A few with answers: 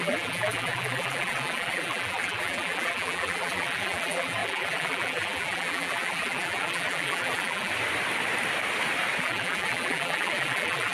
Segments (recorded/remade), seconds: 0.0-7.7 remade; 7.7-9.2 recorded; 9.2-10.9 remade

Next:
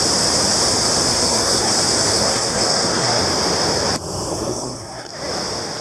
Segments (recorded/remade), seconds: 0.0-1.1 recorded; 1.1-1.7 remade; 1.7-2.1 recorded; 2.1-3.2 remade; 3.2-4.3 recorded; 4.3-5.1 remade; 5.1-5.8 recorded

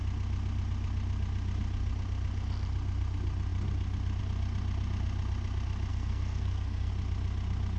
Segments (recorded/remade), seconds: 0.0-5.9 recorded; 5.9-6.9 remade; 6.9-7.8 recorded

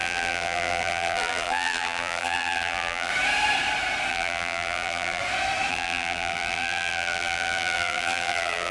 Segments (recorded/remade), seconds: 0.0-3.1 remade; 3.1-4.1 recorded; 4.1-5.2 remade; 5.2-5.7 recorded; 5.7-8.7 remade

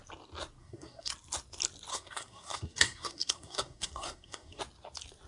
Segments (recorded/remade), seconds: 0.0-0.6 recorded; 0.6-1.1 remade; 1.1-1.9 recorded; 1.9-4.6 remade; 4.6-5.3 recorded

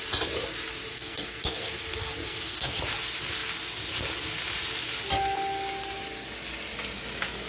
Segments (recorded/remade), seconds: 0.0-0.9 recorded; 0.9-2.8 remade; 2.8-7.5 recorded

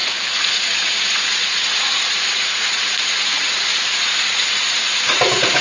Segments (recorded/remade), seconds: 0.0-5.6 remade

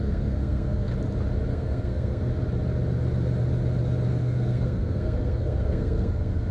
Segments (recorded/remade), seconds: 0.0-0.9 remade; 0.9-1.5 recorded; 1.5-2.3 remade; 2.3-4.1 recorded; 4.1-6.5 remade